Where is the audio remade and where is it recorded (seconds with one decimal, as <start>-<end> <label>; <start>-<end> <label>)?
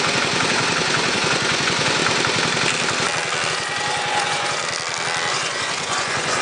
0.0-2.0 remade; 2.0-3.5 recorded; 3.5-4.6 remade; 4.6-5.3 recorded; 5.3-6.4 remade